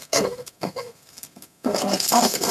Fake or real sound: fake